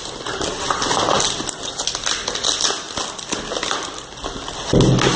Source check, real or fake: real